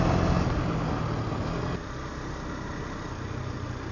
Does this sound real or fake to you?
real